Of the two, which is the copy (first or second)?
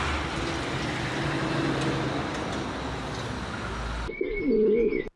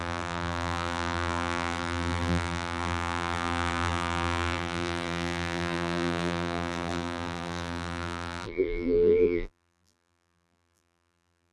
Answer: second